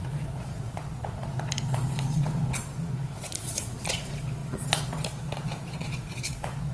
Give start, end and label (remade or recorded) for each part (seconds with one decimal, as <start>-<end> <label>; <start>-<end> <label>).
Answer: 0.0-6.7 remade